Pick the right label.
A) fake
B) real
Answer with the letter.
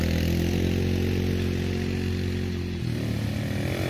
B